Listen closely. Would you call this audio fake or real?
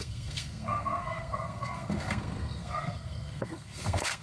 fake